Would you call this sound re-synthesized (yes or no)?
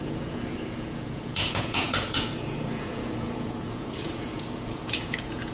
yes